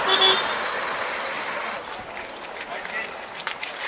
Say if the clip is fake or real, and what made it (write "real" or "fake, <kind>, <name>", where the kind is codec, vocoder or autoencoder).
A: real